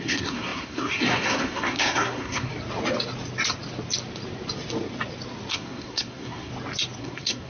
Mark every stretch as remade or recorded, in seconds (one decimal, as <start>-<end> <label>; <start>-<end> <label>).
0.0-2.5 remade; 2.5-5.5 recorded; 5.5-6.5 remade; 6.5-7.0 recorded; 7.0-7.5 remade